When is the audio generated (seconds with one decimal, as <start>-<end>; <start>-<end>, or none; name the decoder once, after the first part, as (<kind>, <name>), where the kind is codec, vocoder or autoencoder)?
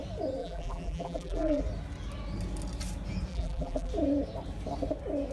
0.4-1.6 (vocoder, BigVGAN v2); 3.3-3.9